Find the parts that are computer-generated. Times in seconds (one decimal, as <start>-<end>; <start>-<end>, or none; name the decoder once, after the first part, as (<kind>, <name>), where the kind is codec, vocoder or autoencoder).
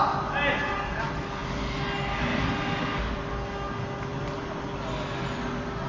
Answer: none